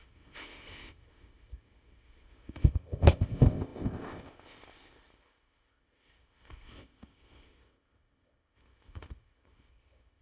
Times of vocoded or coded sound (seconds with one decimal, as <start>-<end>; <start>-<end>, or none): 0.0-10.2